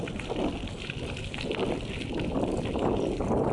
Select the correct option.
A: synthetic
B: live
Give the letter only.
B